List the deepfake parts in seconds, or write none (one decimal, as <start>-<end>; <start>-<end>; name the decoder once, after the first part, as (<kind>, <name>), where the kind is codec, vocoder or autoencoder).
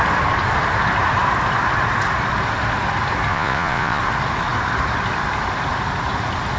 3.3-4.0 (vocoder, Vocos)